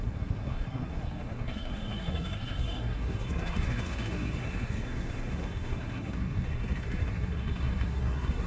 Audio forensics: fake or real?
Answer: fake